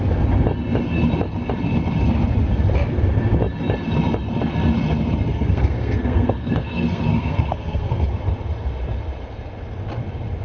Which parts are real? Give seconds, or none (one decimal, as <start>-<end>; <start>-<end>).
0.0-5.3; 8.1-10.4